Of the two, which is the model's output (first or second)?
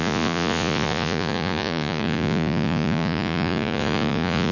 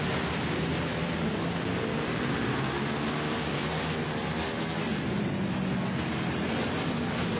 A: first